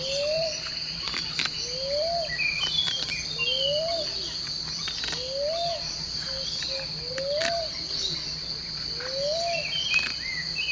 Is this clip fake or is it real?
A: real